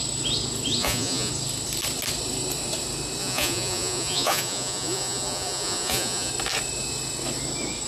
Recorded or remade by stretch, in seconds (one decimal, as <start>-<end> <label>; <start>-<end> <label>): 0.0-0.8 recorded; 0.8-1.3 remade; 1.3-3.2 recorded; 3.2-6.3 remade; 6.3-7.9 recorded